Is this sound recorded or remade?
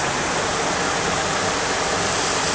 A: recorded